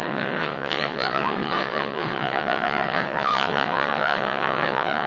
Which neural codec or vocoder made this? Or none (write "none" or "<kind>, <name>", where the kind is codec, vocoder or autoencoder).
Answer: vocoder, WaveNeXt